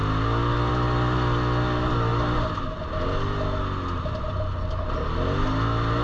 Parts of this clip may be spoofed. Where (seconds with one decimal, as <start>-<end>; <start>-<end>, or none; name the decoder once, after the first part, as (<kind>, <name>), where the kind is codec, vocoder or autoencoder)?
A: none